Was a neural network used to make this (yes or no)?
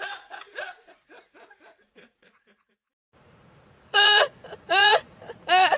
yes